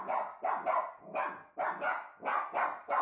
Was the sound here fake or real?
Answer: real